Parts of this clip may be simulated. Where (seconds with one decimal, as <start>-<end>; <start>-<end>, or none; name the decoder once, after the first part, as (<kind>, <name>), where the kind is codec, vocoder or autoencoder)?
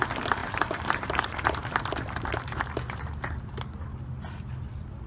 0.4-3.1 (vocoder, BigVGAN v2)